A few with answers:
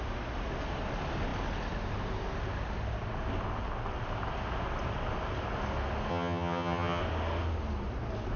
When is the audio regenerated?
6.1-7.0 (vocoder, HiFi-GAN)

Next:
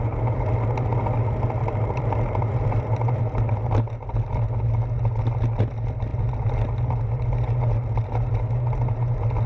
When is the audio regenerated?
1.6-3.2 (vocoder, BigVGAN v2)